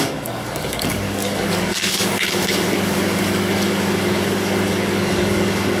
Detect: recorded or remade remade